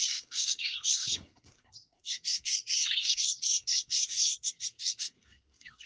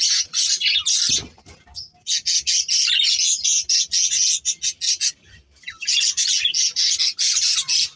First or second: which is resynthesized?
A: first